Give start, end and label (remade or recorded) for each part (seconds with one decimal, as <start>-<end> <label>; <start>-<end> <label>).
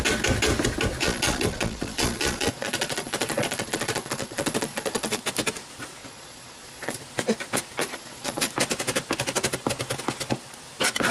0.0-1.0 recorded; 1.0-5.2 remade; 5.2-6.0 recorded; 6.0-7.0 remade; 7.0-7.8 recorded; 7.8-8.5 remade; 8.5-11.1 recorded